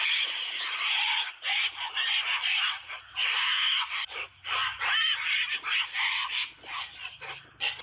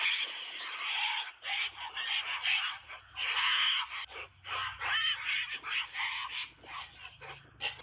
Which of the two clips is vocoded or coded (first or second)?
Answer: first